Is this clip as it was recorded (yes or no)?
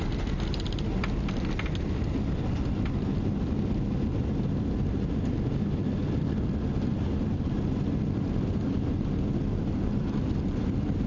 yes